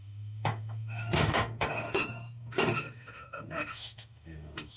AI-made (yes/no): yes